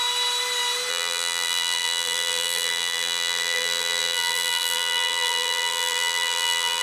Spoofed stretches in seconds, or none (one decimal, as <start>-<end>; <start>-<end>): 0.9-6.8